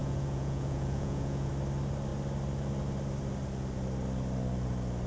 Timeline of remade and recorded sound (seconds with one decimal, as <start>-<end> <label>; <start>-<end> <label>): 0.0-1.5 remade; 1.5-5.1 recorded